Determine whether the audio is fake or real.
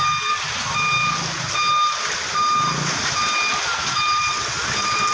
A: real